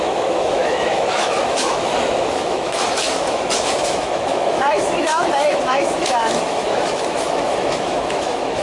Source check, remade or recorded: remade